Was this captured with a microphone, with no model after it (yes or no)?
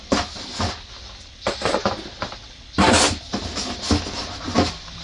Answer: yes